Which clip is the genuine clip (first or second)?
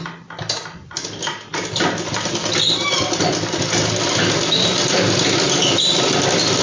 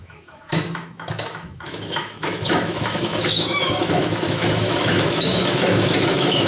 first